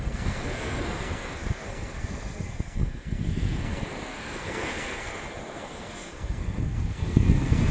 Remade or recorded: remade